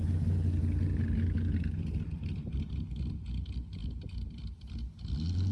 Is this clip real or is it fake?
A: real